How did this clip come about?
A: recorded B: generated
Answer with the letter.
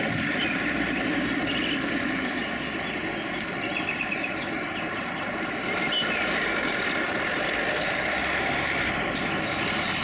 B